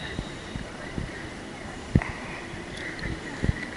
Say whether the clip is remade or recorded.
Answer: recorded